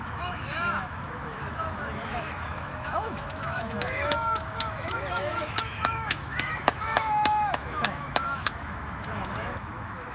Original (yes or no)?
no